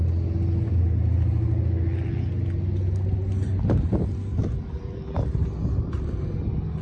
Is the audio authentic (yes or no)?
yes